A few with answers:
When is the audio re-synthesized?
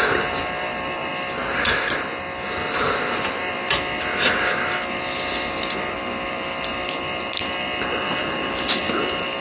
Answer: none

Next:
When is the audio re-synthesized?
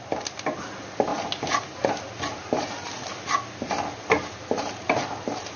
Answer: none